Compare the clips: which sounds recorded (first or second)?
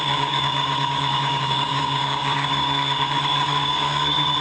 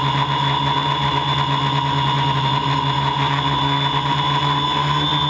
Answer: second